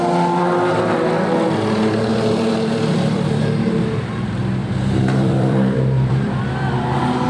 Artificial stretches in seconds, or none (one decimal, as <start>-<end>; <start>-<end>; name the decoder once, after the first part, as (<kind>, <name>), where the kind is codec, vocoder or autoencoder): 2.1-3.4 (vocoder, BigVGAN v2); 4.6-6.4